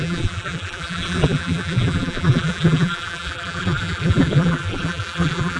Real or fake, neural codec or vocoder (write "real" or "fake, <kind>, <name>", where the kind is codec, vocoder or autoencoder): fake, vocoder, BigVGAN v2